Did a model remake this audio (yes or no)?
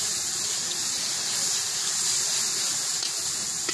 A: no